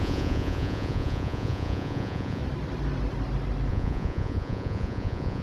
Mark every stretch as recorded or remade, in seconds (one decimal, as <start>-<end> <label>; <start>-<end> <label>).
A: 0.0-2.4 remade; 2.4-3.7 recorded; 3.7-5.4 remade